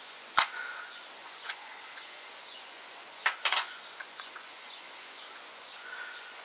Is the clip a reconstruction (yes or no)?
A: yes